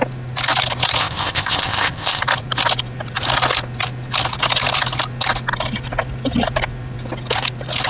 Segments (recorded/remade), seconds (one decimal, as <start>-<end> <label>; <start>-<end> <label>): 0.0-1.0 recorded; 1.0-2.2 remade; 2.2-7.9 recorded